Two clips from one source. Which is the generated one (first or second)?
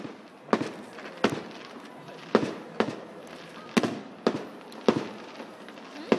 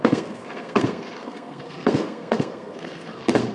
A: second